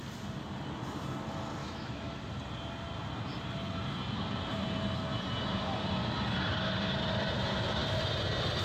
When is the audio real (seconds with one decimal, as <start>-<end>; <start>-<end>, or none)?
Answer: 0.0-1.6; 2.2-8.6